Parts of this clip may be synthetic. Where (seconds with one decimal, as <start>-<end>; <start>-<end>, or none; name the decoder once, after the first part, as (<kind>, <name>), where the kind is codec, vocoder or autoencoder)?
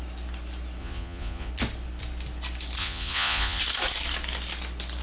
0.8-1.5 (vocoder, Vocos); 2.8-3.6